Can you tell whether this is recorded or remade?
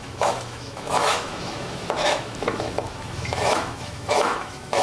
remade